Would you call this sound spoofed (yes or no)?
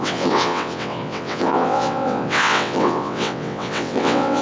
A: yes